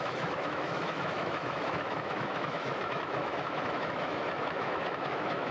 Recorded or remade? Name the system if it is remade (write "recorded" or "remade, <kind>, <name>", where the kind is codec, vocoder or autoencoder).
remade, autoencoder, DAC-VAE